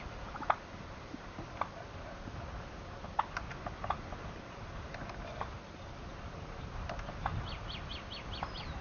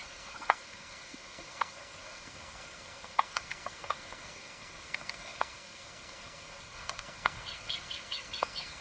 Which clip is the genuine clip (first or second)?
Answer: first